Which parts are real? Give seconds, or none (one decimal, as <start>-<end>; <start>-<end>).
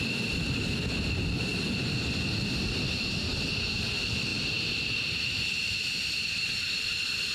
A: 0.0-7.3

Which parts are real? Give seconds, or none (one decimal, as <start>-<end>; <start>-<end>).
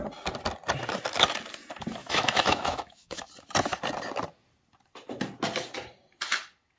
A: 0.0-2.0; 3.3-6.8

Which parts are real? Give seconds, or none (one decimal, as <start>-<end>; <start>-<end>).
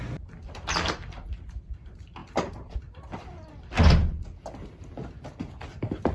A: 0.0-6.1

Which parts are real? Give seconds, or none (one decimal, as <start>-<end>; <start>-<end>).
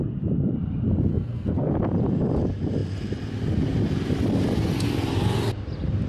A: 0.0-1.1; 1.7-6.1